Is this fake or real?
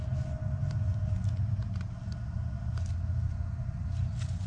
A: real